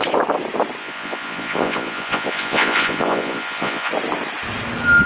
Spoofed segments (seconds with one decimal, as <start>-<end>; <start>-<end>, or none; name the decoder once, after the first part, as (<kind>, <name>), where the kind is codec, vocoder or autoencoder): 0.8-3.9 (vocoder, Vocos)